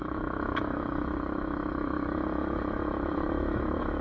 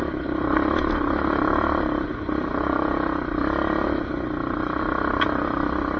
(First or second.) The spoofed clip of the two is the first